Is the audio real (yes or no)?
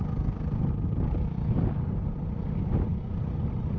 yes